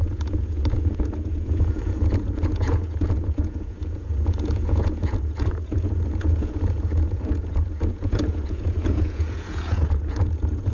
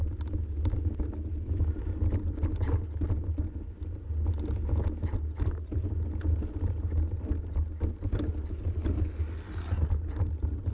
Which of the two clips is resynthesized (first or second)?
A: first